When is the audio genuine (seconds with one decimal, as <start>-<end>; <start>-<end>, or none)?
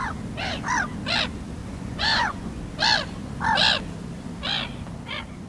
0.0-1.6; 2.6-5.5